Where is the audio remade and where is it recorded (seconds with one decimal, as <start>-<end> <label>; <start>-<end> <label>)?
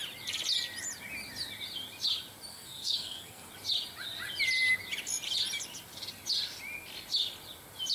0.0-2.5 recorded; 2.5-3.5 remade; 3.5-7.9 recorded